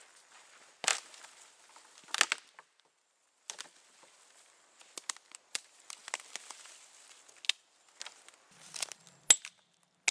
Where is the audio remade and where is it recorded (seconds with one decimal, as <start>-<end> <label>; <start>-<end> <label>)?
0.0-10.1 recorded